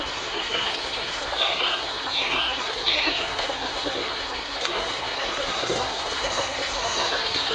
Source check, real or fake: fake